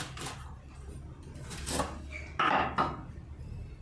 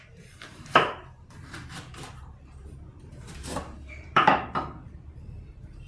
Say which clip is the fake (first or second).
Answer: second